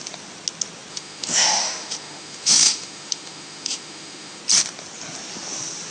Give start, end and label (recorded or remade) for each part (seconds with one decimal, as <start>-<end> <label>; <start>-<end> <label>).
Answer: 0.0-0.9 recorded; 0.9-4.4 remade; 4.4-5.9 recorded